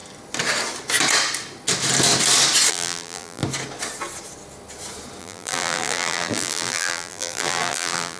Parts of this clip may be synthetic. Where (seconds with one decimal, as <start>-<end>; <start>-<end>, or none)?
2.7-3.4; 5.2-8.2